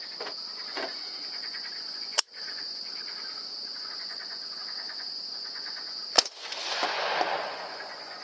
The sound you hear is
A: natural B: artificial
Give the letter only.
B